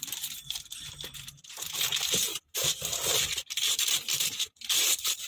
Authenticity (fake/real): fake